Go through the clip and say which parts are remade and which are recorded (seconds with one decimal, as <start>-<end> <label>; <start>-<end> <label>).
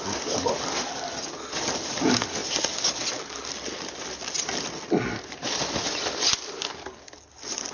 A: 0.0-7.7 recorded